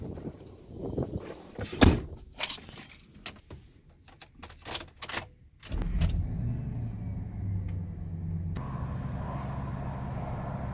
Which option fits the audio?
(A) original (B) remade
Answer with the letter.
A